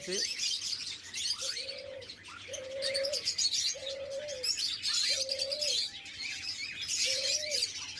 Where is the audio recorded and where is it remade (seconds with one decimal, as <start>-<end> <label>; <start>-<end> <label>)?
0.0-2.5 remade; 2.5-7.3 recorded; 7.3-8.0 remade